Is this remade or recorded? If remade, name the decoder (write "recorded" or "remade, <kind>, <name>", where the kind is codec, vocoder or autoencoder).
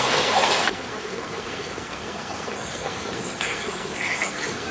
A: remade, codec, SNAC